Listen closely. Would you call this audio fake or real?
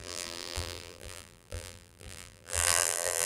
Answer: fake